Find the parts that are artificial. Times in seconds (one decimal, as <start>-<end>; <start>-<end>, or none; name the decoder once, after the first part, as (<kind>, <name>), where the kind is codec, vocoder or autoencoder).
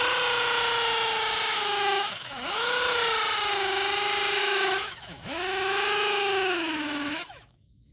1.5-2.8 (autoencoder, DAC-VAE); 4.4-7.9